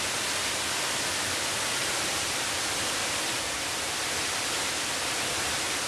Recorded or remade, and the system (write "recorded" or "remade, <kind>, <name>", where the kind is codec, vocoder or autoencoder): remade, vocoder, BigVGAN v2